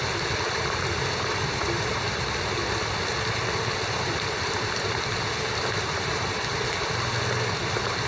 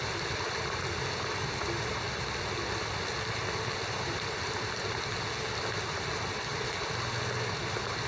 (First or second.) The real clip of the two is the second